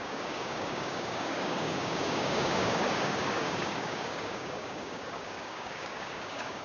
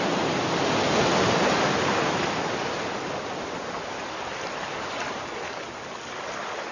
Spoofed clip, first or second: first